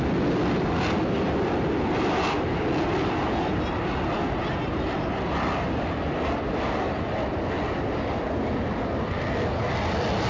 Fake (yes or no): no